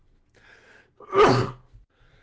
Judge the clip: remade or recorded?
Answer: recorded